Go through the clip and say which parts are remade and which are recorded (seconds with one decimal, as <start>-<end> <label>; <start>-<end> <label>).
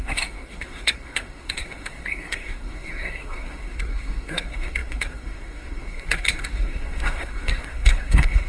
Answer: 0.0-8.5 remade